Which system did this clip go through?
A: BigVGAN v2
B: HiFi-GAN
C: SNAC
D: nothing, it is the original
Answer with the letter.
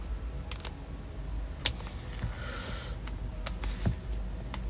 D